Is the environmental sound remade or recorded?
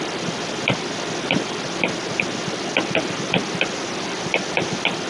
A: recorded